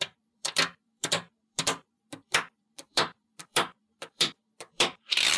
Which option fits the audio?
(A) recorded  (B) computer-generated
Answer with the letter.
B